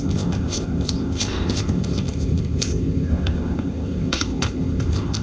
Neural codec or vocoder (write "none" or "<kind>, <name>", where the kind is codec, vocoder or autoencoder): codec, ZipCodec